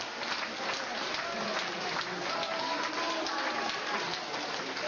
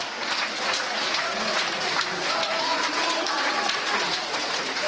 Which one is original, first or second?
first